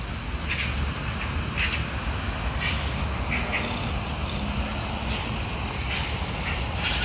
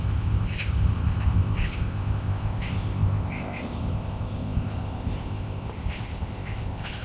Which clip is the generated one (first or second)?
second